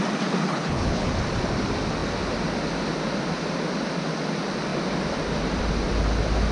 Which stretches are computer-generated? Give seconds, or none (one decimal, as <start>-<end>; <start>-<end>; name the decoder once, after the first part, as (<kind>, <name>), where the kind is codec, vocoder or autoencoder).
0.5-1.1 (codec, HILCodec)